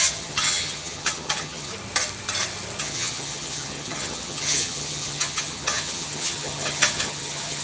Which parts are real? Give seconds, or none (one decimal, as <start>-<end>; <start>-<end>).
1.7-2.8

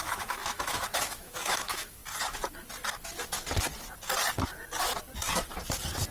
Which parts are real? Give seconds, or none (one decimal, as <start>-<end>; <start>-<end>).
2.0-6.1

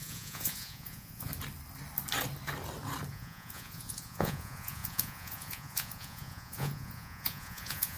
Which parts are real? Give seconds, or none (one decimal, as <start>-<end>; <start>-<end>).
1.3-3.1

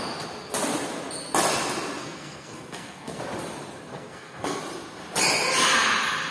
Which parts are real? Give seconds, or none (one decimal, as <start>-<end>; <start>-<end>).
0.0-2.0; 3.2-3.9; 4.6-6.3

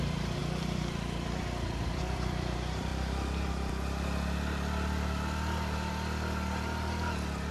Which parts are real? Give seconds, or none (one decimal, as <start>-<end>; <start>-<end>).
2.9-7.5

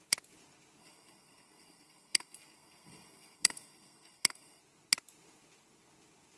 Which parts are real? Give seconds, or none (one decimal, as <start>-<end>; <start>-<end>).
0.0-0.8; 4.6-6.4

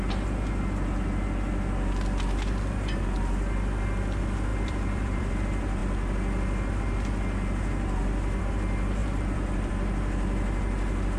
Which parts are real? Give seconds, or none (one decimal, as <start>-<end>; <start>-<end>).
0.0-4.5; 5.3-9.0; 9.7-11.2